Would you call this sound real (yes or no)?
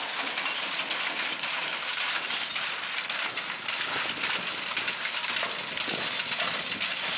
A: yes